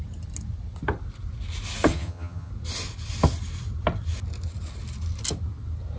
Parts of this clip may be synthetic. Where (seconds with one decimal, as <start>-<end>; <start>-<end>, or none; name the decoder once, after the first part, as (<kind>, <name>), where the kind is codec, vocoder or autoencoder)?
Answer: 1.9-2.5 (vocoder, HiFi-GAN)